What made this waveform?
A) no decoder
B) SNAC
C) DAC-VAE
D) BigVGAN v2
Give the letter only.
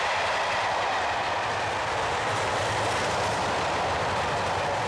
D